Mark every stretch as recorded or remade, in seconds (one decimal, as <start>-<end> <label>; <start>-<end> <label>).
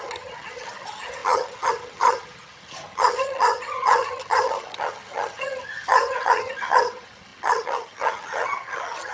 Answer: 0.0-9.1 remade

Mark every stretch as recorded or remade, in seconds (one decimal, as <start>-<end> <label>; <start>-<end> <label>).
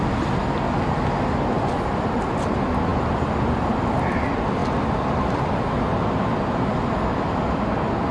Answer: 0.0-8.1 recorded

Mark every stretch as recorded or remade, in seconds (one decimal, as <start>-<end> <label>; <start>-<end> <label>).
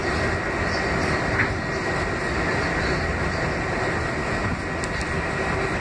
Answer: 0.0-5.8 recorded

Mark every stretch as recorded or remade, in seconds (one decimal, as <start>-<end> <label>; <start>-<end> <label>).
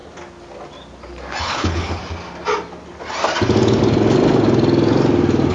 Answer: 0.0-1.4 recorded; 1.4-2.0 remade; 2.0-5.5 recorded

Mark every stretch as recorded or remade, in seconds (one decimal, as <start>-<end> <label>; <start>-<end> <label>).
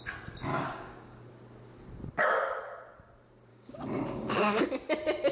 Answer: 0.0-0.5 recorded; 0.5-1.3 remade; 1.3-3.5 recorded; 3.5-4.7 remade; 4.7-5.3 recorded